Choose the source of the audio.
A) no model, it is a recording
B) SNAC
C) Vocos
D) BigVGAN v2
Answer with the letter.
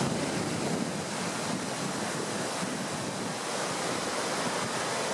A